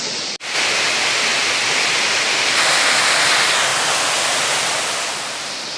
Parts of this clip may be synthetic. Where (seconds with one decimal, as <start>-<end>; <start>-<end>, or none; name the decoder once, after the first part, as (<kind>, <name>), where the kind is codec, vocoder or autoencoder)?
none